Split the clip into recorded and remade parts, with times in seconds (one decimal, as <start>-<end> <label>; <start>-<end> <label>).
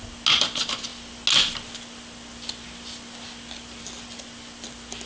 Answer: 0.0-5.1 recorded